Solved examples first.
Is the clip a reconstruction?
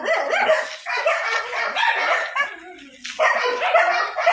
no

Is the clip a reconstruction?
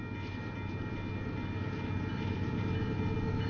no